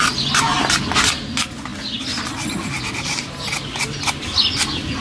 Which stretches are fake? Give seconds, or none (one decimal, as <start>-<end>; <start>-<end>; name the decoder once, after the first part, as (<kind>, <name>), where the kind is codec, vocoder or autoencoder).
none